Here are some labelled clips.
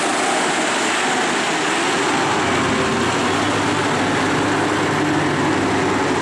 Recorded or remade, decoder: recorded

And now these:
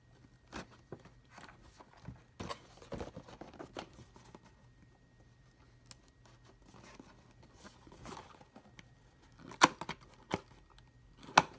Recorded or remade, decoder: recorded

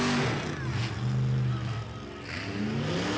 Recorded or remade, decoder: recorded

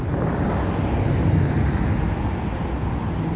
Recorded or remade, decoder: recorded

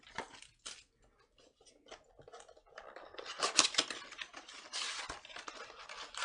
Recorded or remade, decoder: recorded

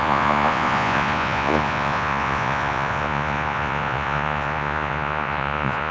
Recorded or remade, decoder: remade, vocoder, Vocos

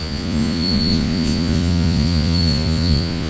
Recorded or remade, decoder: remade, vocoder, Vocos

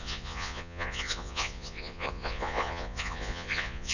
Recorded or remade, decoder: remade, vocoder, Vocos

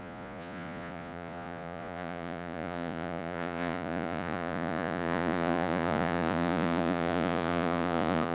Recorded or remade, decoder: remade, vocoder, Vocos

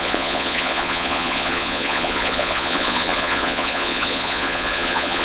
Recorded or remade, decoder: remade, vocoder, Vocos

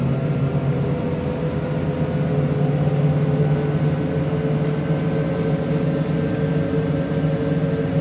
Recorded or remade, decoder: recorded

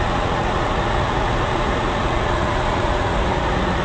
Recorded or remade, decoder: remade, vocoder, Vocos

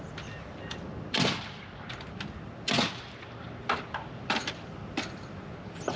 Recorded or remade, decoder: recorded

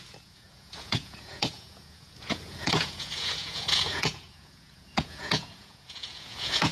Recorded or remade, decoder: remade, vocoder, Vocos